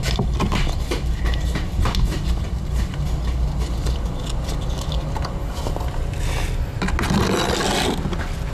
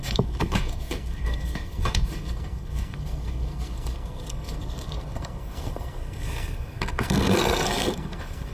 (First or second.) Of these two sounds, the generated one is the second